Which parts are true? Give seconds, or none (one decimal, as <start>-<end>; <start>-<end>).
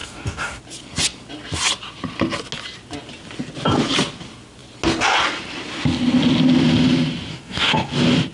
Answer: 0.6-7.3; 7.9-8.3